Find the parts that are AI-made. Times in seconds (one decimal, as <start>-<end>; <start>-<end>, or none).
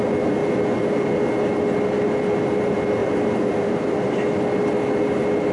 3.0-3.7